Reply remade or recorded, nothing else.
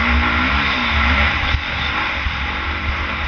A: recorded